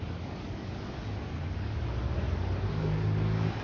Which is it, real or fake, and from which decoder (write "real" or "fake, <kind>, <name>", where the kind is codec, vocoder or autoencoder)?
fake, codec, DAC